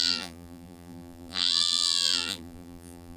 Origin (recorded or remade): remade